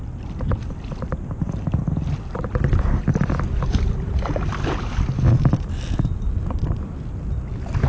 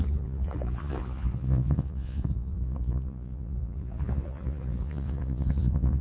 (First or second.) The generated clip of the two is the second